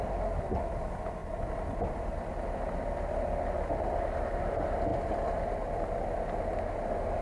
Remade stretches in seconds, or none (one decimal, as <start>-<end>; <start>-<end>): 1.2-2.3